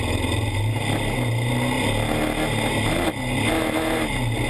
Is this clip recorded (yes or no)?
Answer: yes